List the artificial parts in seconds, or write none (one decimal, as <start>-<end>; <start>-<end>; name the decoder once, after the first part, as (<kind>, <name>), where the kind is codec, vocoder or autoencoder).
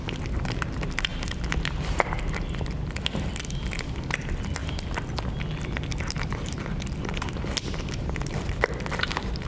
none